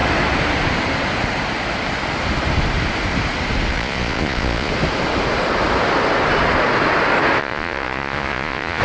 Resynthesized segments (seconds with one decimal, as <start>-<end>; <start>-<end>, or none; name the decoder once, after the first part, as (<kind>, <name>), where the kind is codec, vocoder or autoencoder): 3.7-4.7 (vocoder, Vocos); 7.4-8.8